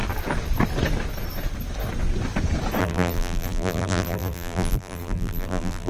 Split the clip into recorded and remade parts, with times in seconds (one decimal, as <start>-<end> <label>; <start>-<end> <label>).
0.0-2.8 recorded; 2.8-5.9 remade